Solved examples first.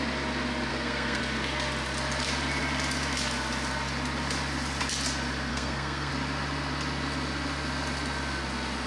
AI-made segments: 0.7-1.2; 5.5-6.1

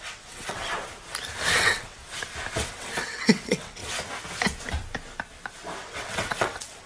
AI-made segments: 0.0-0.7; 1.6-2.0; 2.7-3.8; 5.8-6.9

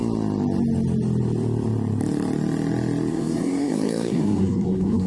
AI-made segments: 3.1-5.1